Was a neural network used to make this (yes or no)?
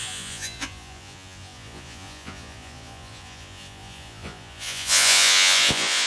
yes